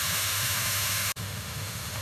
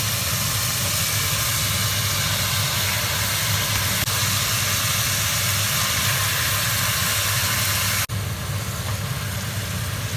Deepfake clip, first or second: first